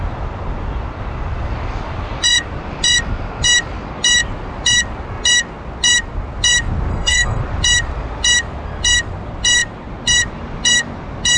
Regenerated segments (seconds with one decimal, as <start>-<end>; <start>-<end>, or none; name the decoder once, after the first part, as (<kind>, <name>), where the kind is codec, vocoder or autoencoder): 6.9-7.4 (codec, SNAC)